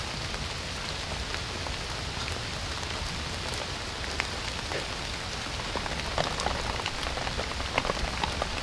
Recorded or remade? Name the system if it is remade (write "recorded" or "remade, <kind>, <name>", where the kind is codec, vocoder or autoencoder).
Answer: recorded